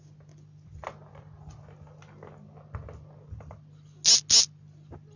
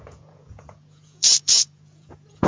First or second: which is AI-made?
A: second